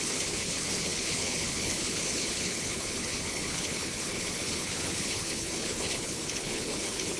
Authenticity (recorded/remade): remade